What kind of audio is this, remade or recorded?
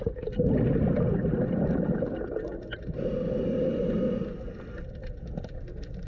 recorded